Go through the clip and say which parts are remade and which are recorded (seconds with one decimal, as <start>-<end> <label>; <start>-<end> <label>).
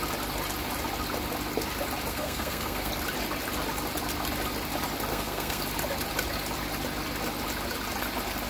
0.0-2.1 recorded; 2.1-2.9 remade; 2.9-5.1 recorded; 5.1-5.6 remade; 5.6-8.5 recorded